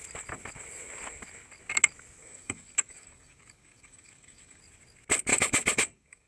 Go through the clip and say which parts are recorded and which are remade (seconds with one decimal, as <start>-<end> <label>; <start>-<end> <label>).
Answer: 0.0-2.2 recorded; 2.2-4.6 remade; 4.6-5.3 recorded; 5.3-6.3 remade